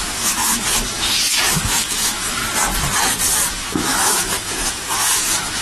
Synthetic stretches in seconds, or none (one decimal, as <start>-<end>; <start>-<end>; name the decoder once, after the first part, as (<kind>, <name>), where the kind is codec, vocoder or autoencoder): 0.0-2.4 (autoencoder, DAC-VAE); 3.5-5.6